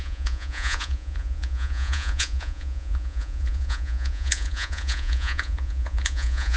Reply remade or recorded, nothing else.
remade